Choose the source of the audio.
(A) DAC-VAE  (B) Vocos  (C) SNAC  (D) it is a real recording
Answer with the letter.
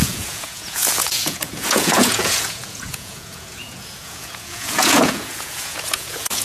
B